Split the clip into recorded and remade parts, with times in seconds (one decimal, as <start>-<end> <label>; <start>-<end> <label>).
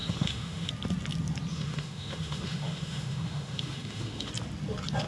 0.0-0.7 remade; 0.7-1.5 recorded; 1.5-4.3 remade; 4.3-5.1 recorded